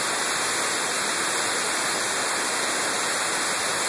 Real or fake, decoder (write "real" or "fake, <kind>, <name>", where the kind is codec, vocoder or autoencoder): real